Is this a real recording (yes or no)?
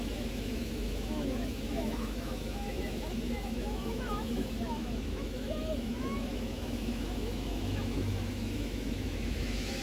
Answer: no